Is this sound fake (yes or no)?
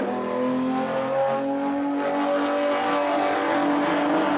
no